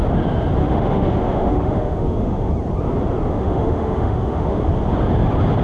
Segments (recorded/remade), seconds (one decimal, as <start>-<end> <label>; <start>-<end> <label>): 0.0-0.6 recorded; 0.6-2.5 remade; 2.5-3.3 recorded; 3.3-4.6 remade; 4.6-5.6 recorded